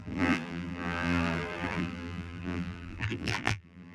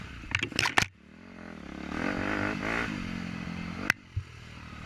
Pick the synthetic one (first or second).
first